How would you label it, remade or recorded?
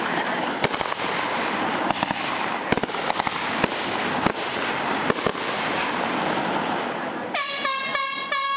recorded